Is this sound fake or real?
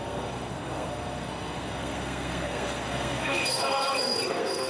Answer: fake